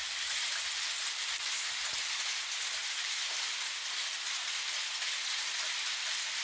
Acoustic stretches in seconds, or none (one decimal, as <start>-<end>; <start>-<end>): 1.8-2.8; 4.9-6.4